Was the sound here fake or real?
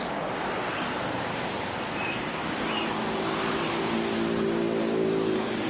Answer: fake